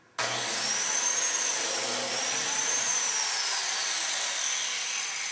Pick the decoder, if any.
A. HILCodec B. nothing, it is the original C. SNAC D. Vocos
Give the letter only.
B